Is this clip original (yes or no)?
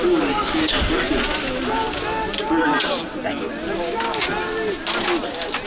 yes